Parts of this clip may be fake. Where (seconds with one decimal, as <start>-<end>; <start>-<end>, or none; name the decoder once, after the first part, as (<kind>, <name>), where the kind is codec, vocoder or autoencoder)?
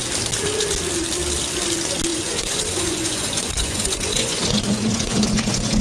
2.1-5.8 (vocoder, Vocos)